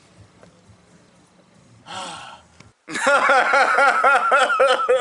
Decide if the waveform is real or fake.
real